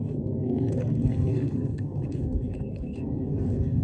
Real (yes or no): no